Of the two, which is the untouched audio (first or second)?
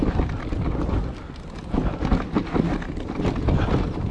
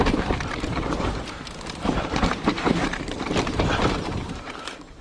first